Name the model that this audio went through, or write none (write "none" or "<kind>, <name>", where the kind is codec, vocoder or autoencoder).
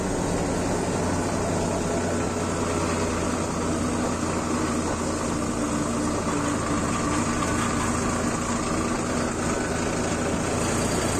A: none